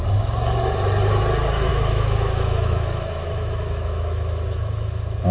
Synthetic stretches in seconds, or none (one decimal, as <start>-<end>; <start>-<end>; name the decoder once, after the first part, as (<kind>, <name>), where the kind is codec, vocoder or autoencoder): 1.7-5.3 (autoencoder, DAC-VAE)